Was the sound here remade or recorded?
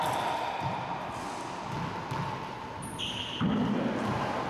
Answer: recorded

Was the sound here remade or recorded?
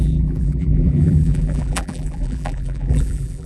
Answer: remade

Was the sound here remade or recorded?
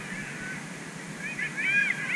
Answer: recorded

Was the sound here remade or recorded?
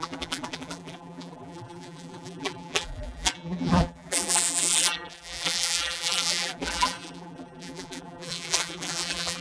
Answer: remade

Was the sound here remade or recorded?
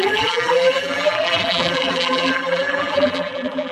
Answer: remade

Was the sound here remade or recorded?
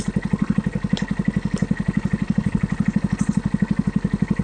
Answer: recorded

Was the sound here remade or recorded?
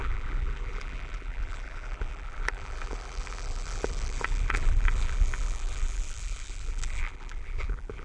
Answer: remade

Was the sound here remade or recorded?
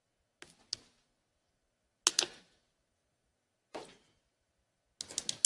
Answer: recorded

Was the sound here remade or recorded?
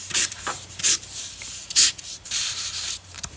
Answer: remade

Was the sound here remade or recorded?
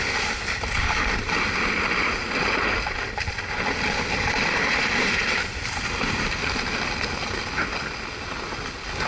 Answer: recorded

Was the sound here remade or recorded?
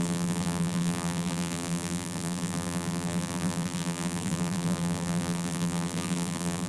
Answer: remade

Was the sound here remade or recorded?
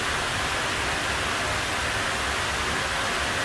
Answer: recorded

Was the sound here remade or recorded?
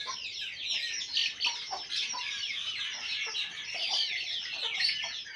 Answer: recorded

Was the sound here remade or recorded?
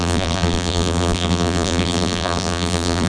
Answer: remade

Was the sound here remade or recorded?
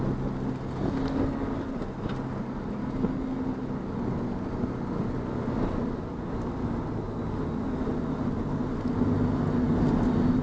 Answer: recorded